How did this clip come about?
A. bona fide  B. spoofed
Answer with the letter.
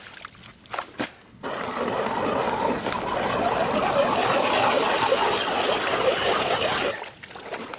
A